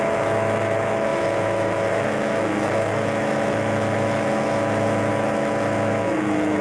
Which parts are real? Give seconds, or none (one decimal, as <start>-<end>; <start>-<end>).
none